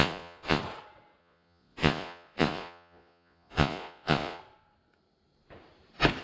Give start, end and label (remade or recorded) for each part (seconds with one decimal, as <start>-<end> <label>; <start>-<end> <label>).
0.0-0.6 remade; 0.6-1.2 recorded; 1.2-4.4 remade; 4.4-6.2 recorded